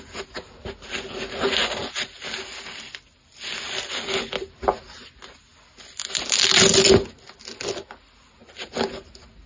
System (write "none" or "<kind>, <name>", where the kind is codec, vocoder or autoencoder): none